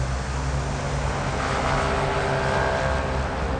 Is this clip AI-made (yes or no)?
no